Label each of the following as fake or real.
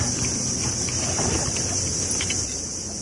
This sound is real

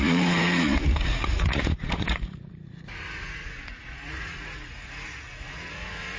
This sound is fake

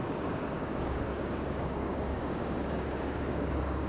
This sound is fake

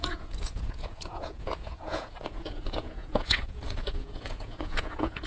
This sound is fake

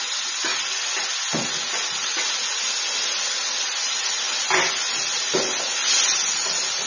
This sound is real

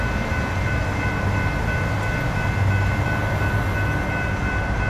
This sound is real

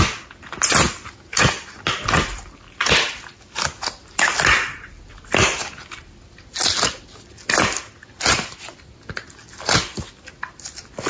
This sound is real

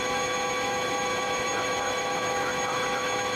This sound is fake